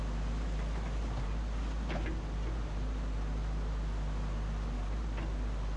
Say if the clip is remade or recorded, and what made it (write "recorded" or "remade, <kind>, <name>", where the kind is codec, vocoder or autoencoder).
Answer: recorded